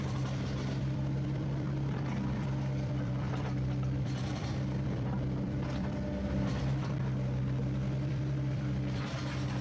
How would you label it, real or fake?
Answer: fake